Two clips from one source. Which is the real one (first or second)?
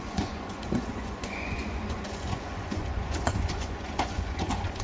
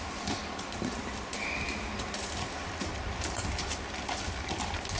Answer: second